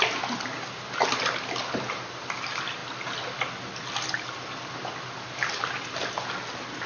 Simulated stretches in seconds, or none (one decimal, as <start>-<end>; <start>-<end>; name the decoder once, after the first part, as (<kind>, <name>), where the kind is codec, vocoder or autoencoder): none